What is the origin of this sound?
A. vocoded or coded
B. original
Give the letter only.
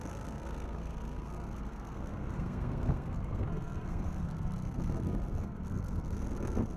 A